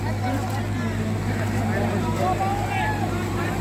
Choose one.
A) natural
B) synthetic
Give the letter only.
A